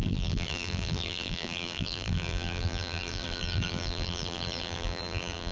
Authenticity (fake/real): fake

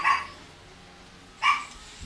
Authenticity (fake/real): real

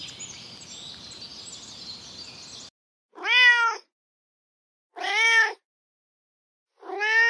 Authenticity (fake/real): real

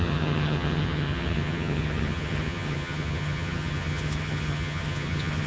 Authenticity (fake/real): fake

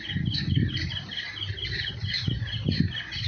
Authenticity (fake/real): real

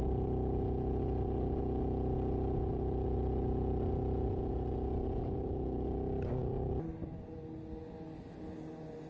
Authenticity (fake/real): real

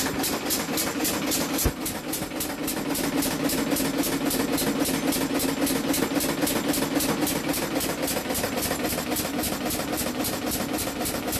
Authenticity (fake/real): real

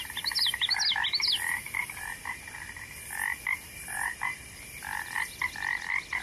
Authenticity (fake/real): real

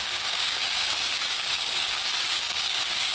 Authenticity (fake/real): fake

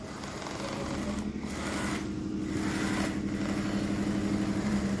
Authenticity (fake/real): real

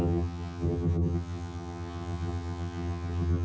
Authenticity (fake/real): fake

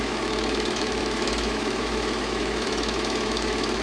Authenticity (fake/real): fake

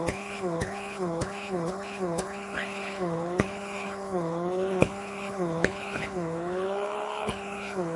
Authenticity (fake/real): fake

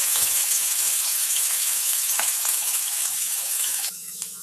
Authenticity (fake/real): fake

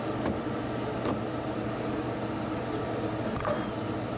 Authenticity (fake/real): real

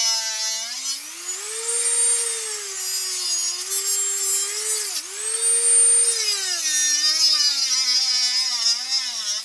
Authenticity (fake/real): real